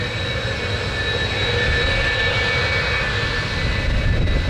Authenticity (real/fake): real